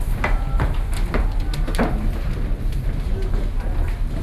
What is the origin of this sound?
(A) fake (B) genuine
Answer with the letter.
B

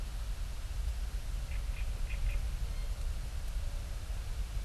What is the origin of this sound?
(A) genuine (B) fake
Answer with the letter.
A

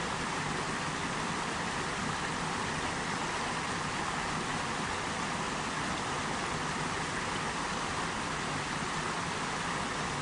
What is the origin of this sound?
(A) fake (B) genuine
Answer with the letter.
B